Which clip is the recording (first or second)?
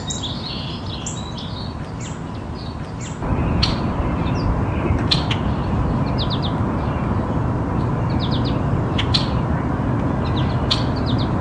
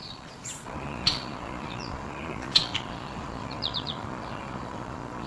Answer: first